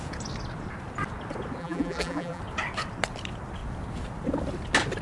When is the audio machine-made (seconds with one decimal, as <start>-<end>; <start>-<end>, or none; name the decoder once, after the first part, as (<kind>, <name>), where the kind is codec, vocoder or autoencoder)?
1.6-2.4 (vocoder, BigVGAN v2)